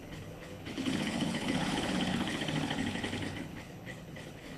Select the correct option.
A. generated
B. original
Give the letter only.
A